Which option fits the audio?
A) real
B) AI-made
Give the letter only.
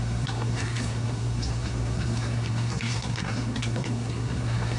B